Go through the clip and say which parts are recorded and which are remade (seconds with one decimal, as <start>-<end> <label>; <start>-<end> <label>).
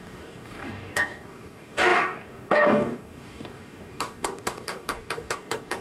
0.0-5.8 remade